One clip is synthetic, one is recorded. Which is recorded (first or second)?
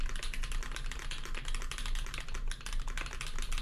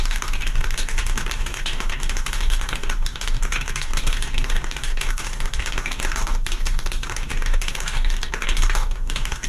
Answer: first